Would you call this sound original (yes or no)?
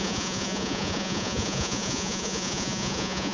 no